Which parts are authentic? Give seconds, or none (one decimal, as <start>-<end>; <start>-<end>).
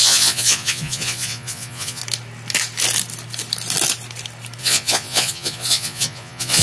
2.0-4.6